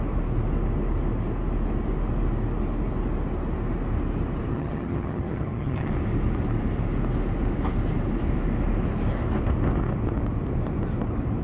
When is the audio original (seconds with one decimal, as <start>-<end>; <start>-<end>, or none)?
0.0-4.5; 5.9-11.4